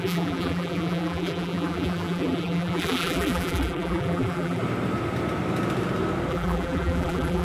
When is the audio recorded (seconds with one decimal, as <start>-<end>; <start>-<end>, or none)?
4.6-6.3